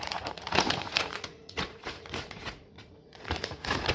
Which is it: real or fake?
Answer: fake